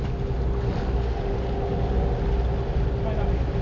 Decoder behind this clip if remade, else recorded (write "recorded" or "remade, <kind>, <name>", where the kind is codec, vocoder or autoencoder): recorded